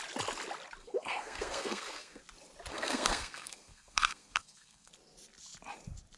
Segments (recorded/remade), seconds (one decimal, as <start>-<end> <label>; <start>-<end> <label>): 0.0-0.8 recorded; 0.8-2.2 remade; 2.2-2.7 recorded; 2.7-4.9 remade; 4.9-6.2 recorded